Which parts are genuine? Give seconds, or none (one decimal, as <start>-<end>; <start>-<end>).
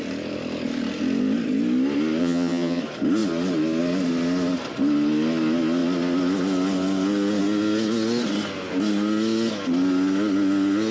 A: 0.0-2.2; 2.8-10.9